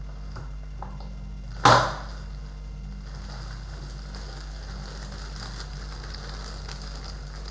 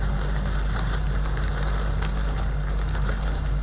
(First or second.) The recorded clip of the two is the first